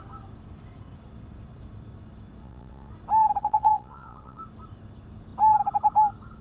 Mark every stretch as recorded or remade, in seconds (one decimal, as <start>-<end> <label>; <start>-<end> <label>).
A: 0.0-2.4 recorded; 2.4-2.9 remade; 2.9-3.4 recorded; 3.4-4.4 remade; 4.4-6.4 recorded